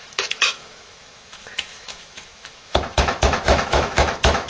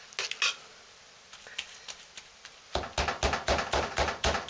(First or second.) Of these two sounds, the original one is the second